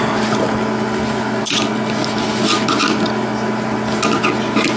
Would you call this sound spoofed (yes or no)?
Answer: no